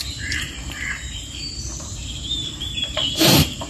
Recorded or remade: remade